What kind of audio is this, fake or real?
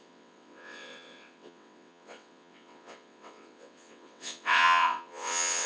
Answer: fake